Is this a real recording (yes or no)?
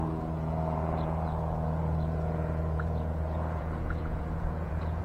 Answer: no